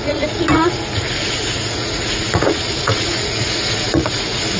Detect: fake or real fake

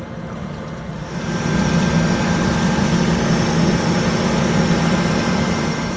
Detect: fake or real real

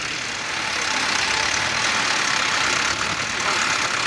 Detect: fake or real real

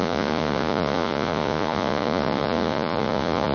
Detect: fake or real fake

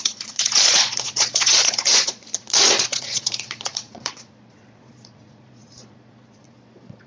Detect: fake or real fake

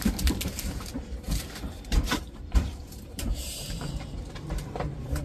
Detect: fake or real fake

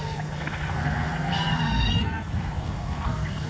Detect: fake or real fake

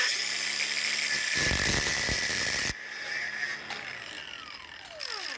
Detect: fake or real real